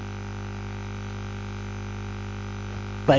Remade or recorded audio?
recorded